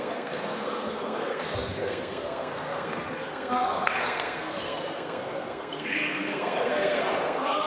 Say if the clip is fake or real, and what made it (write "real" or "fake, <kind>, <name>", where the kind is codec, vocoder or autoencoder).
fake, codec, SNAC